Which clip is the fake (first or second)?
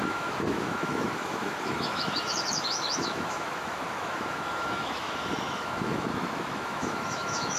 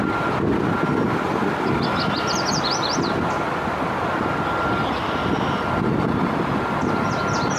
first